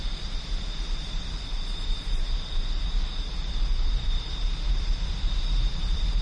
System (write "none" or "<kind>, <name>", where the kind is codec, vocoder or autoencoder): vocoder, BigVGAN v2